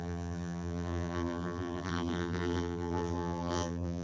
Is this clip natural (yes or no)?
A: no